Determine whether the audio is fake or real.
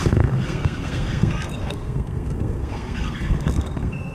fake